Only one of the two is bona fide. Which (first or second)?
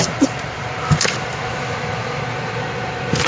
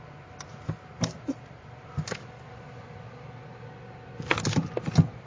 second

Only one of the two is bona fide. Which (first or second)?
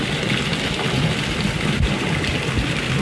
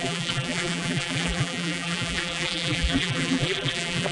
first